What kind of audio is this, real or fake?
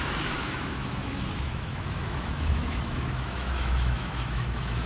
fake